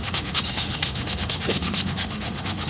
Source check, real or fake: fake